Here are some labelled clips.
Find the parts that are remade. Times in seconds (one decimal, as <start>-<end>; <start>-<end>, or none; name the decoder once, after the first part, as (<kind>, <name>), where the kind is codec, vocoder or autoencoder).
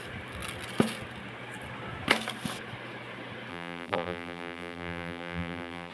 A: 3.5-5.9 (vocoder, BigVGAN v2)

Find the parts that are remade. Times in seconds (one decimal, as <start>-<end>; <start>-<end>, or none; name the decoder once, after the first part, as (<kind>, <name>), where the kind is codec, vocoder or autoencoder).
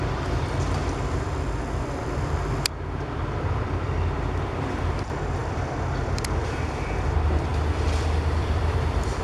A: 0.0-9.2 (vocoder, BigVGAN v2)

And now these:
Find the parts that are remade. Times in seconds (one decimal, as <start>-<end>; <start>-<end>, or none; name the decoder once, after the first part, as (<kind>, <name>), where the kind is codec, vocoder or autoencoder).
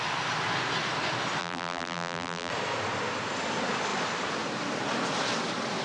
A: 1.4-2.5 (vocoder, BigVGAN v2)